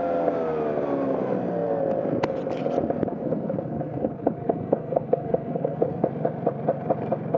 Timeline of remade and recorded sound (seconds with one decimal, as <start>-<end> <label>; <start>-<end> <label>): 0.0-3.1 recorded; 3.1-6.1 remade; 6.1-7.4 recorded